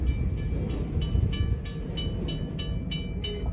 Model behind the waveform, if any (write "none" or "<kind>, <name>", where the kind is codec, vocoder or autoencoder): none